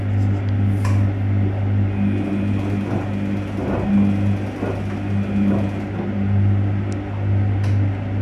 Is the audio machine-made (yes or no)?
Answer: no